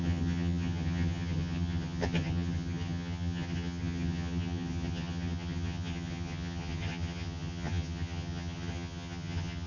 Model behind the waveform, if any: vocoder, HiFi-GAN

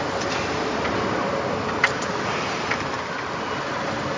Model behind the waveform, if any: none